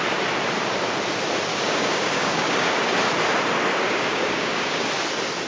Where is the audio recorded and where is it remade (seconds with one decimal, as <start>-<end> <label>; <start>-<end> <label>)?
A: 0.0-1.5 recorded; 1.5-2.9 remade; 2.9-3.7 recorded; 3.7-4.9 remade; 4.9-5.5 recorded